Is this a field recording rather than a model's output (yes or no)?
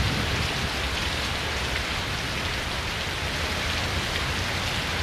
yes